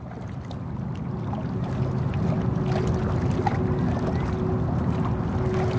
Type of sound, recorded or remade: recorded